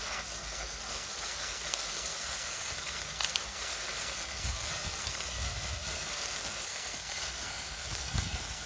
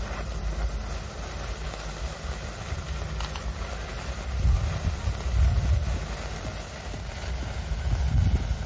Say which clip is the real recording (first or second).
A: second